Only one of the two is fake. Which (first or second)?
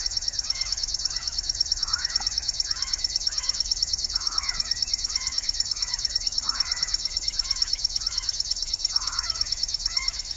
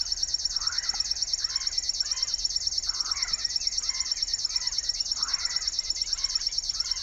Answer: first